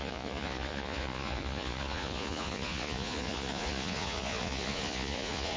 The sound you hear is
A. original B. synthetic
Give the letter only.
B